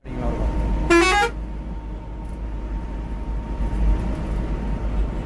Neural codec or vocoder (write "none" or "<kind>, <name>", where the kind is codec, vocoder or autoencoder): none